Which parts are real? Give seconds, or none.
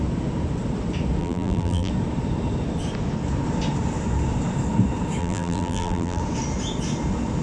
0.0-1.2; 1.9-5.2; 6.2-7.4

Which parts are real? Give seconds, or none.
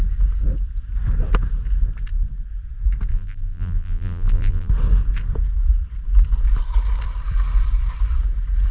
0.0-3.1; 4.7-8.7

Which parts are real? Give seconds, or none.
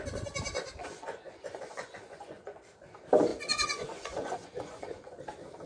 0.0-0.8; 2.6-3.3; 5.2-5.7